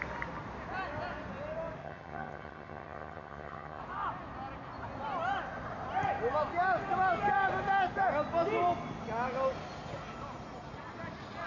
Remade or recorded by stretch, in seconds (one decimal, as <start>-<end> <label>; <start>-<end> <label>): 0.0-1.8 recorded; 1.8-3.8 remade; 3.8-11.5 recorded